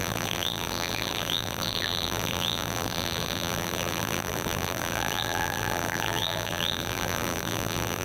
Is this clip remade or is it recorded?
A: remade